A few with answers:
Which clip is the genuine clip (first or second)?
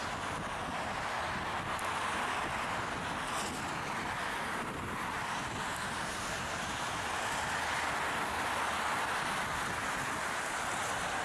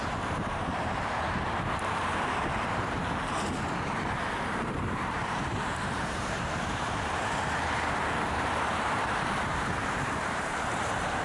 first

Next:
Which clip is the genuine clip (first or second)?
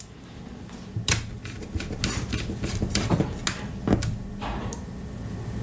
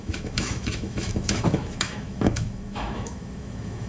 first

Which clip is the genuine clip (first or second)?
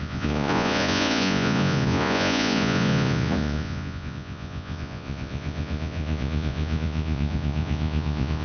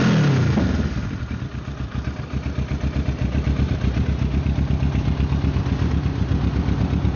second